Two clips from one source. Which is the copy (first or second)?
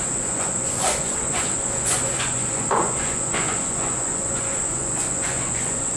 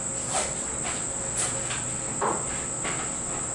first